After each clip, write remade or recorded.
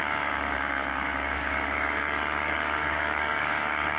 remade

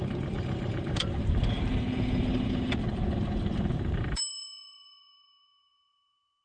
remade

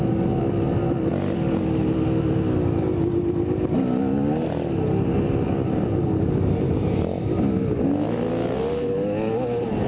recorded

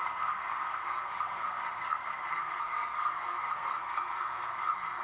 remade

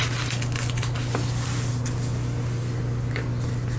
recorded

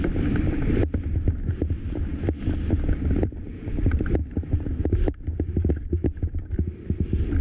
recorded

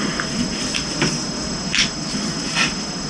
recorded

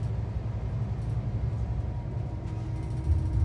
recorded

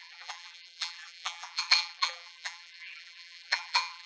remade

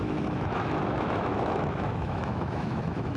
remade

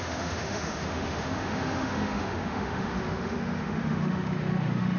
remade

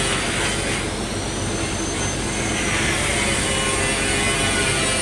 recorded